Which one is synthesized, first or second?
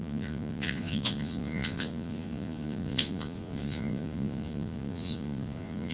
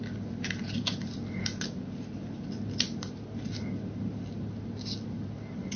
first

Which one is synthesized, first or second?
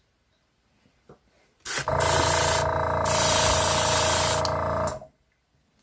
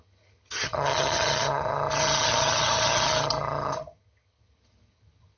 second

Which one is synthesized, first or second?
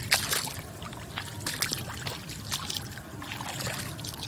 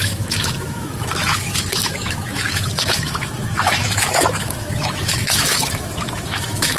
second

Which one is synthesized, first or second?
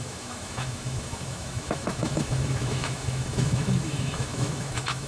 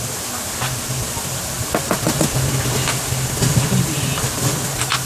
first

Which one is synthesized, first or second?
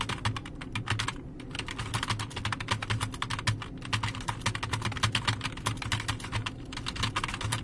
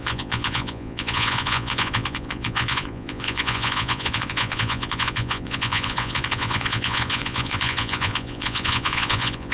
second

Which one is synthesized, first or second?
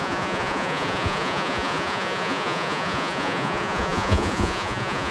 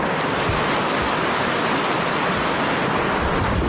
first